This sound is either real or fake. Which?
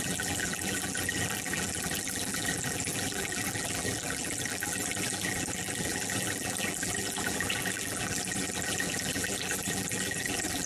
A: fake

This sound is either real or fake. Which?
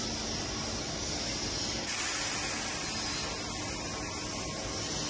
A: real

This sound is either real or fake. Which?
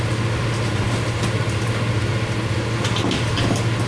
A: real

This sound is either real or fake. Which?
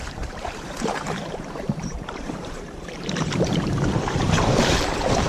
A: fake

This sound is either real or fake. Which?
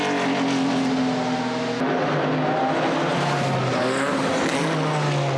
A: real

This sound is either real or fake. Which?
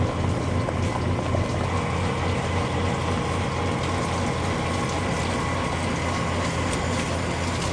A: real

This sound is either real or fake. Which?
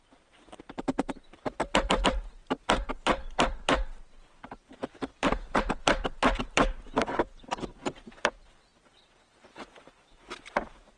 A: fake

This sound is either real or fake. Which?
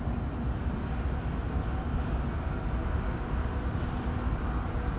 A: real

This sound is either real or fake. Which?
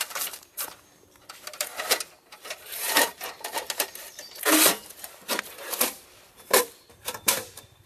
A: fake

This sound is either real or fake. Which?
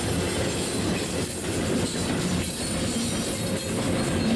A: real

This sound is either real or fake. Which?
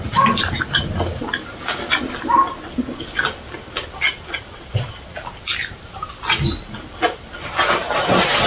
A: fake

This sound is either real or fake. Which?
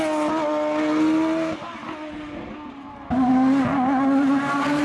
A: real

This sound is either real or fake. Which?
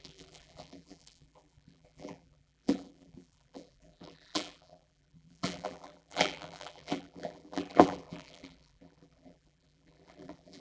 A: fake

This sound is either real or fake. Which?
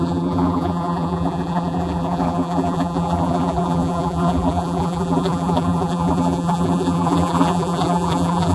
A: fake